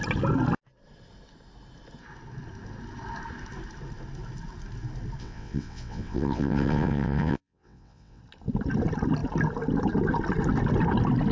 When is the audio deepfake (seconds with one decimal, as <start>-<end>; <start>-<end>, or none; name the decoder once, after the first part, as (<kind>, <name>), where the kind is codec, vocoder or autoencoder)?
5.2-8.2 (vocoder, WaveNeXt)